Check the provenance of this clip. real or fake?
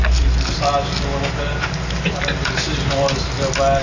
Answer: real